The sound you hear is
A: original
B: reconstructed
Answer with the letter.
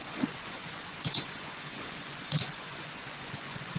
B